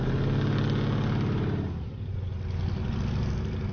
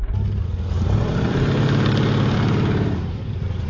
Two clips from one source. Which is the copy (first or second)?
second